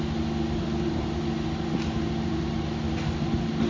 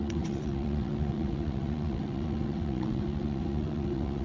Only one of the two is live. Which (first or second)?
first